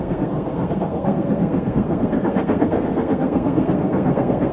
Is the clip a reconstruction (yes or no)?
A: yes